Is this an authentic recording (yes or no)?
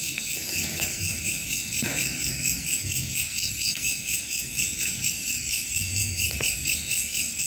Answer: no